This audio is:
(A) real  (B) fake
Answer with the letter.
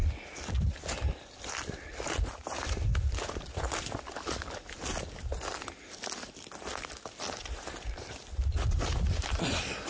A